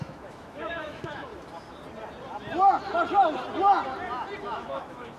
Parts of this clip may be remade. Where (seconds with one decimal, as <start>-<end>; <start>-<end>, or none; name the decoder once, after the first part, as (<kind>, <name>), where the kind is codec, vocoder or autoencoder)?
0.0-1.3 (autoencoder, DAC-VAE); 4.4-5.2